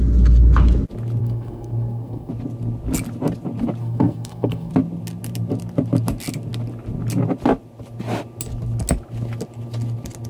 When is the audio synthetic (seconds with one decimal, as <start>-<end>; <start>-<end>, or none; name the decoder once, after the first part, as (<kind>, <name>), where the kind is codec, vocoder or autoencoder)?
1.2-2.3 (codec, SNAC); 3.8-4.7